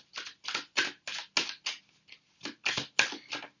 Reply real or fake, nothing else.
real